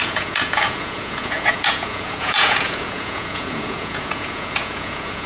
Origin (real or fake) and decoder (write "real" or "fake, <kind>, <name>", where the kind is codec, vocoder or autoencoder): fake, vocoder, Vocos